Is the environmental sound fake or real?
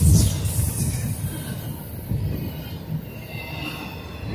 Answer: real